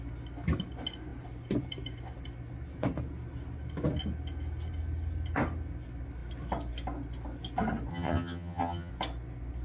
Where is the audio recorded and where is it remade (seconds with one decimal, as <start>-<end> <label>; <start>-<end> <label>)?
0.0-7.9 recorded; 7.9-8.9 remade; 8.9-9.6 recorded